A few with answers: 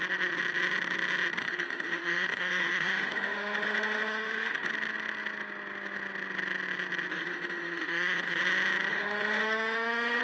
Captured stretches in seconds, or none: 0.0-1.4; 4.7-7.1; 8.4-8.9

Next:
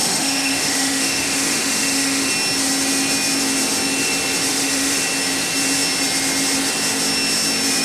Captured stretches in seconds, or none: 2.3-4.5; 5.0-7.8

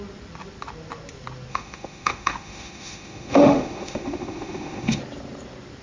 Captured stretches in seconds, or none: 0.0-1.5; 5.0-5.8

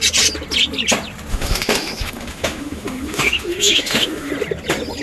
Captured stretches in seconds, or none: 0.0-1.3; 4.3-5.0

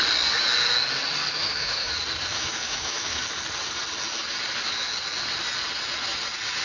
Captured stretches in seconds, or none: 0.0-1.4; 1.9-2.3; 3.2-6.6

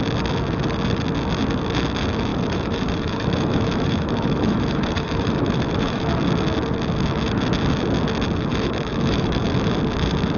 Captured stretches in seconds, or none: 0.0-2.3; 6.0-8.5; 9.5-10.4

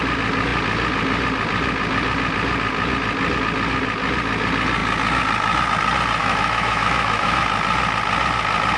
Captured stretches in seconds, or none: 0.0-6.2; 7.4-8.8

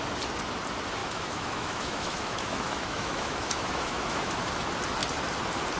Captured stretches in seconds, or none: 0.0-1.0; 4.5-5.8